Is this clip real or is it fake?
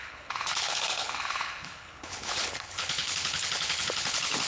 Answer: fake